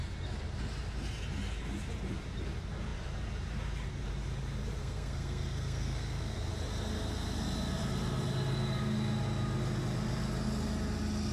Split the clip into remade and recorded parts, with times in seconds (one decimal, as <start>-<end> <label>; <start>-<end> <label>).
0.0-4.8 recorded; 4.8-6.5 remade; 6.5-11.3 recorded